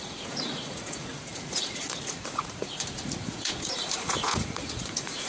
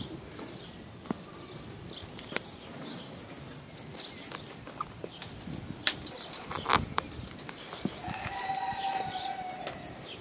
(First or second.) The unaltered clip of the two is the second